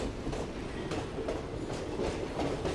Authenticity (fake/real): real